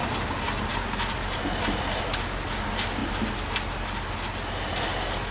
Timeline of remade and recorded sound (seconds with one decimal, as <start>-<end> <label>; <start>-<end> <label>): 0.0-5.3 recorded